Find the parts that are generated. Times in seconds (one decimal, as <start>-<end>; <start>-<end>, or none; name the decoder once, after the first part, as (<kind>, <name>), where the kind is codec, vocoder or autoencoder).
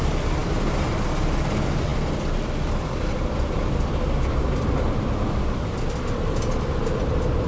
none